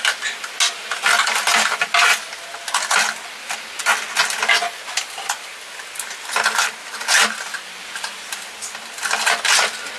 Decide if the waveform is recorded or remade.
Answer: recorded